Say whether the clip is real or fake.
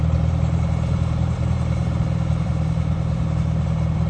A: fake